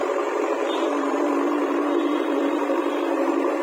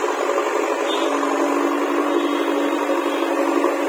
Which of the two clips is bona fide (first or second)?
second